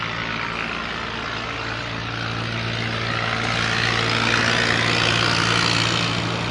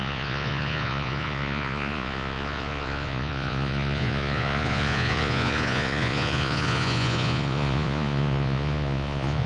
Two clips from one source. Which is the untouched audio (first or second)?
first